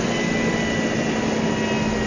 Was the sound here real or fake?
real